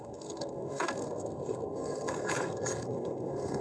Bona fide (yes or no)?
no